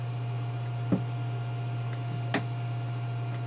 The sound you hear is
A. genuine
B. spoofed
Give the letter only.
A